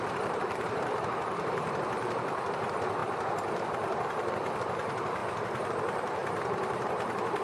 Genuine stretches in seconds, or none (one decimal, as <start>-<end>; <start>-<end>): 3.0-4.6; 5.2-5.7